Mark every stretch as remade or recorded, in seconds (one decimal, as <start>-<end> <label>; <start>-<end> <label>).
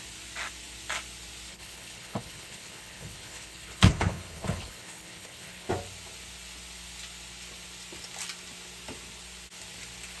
0.0-1.5 recorded; 1.5-5.7 remade; 5.7-10.2 recorded